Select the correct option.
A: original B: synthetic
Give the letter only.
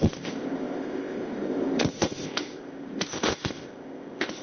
B